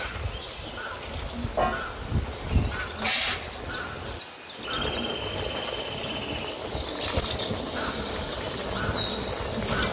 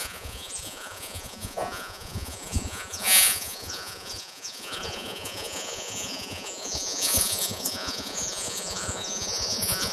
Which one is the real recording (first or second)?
first